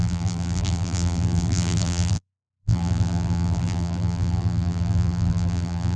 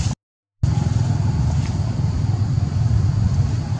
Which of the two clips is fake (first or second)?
first